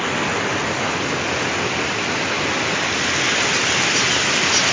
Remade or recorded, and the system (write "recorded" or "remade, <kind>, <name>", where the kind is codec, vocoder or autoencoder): recorded